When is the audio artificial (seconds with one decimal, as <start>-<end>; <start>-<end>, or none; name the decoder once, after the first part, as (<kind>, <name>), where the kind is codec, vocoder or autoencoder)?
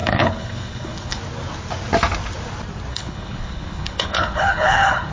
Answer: 0.0-1.2 (codec, HILCodec); 2.9-5.1